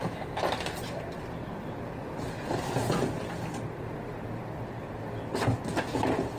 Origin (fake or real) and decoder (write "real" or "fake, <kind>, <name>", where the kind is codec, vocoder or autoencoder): fake, vocoder, BigVGAN v2